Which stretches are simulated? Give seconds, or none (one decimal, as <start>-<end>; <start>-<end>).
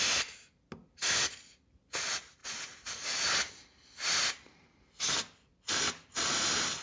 none